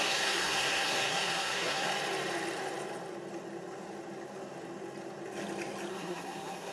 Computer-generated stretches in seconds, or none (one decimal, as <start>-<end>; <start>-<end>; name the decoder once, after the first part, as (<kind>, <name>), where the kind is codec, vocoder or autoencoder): 0.0-1.9 (codec, SNAC); 5.9-6.7